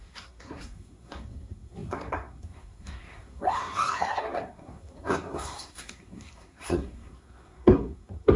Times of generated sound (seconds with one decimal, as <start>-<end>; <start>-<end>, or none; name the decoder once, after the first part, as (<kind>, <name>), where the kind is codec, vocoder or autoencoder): 0.0-8.4 (codec, SNAC)